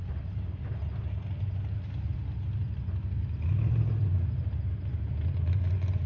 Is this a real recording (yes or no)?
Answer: yes